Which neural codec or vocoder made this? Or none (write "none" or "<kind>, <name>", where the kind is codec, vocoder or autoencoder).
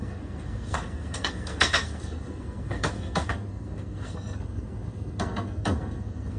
codec, SNAC